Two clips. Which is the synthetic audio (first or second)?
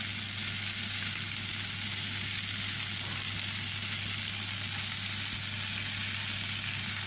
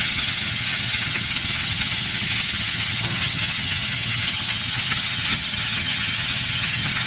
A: second